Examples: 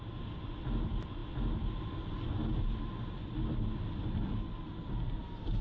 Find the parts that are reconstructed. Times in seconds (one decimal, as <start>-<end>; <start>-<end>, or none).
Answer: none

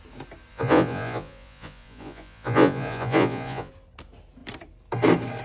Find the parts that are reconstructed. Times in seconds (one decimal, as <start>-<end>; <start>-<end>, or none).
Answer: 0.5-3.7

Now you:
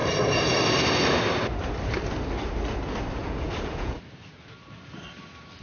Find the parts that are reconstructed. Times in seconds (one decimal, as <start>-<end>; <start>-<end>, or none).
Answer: 3.2-4.0